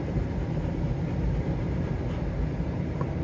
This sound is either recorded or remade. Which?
remade